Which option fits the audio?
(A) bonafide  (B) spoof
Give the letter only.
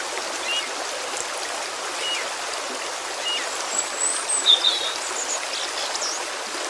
A